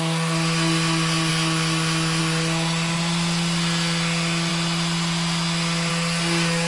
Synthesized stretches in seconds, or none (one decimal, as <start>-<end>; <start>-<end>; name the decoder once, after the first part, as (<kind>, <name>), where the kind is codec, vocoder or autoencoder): none